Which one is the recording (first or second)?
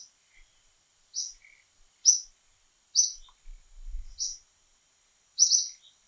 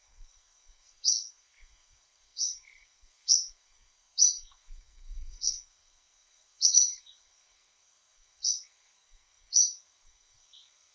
first